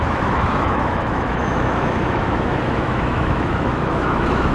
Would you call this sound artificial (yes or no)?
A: yes